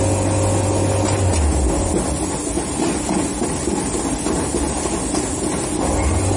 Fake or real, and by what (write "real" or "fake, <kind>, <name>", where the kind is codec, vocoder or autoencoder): real